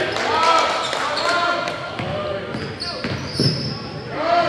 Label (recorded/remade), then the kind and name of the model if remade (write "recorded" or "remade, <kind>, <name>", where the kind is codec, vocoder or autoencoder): recorded